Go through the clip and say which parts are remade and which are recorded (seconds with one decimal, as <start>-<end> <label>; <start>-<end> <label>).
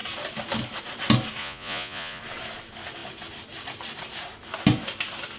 0.0-1.4 recorded; 1.4-2.2 remade; 2.2-5.4 recorded